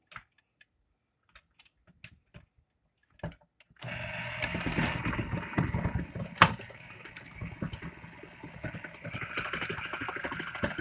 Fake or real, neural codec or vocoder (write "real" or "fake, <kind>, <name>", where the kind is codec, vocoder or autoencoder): real